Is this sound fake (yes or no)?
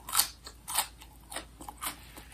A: no